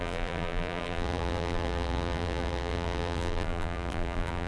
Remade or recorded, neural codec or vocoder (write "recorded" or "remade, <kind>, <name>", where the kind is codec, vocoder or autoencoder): remade, vocoder, BigVGAN v2